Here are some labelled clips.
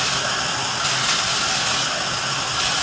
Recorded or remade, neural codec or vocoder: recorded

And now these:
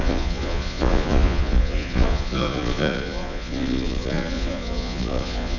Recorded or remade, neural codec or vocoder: remade, vocoder, Vocos